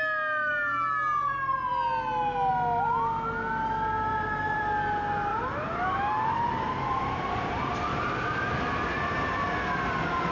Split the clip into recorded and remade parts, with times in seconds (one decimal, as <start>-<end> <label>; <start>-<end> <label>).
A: 0.0-4.1 recorded; 4.1-4.6 remade; 4.6-5.3 recorded; 5.3-8.4 remade; 8.4-10.3 recorded